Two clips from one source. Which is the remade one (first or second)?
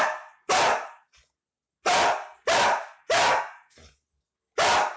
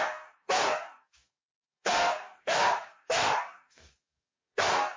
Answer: second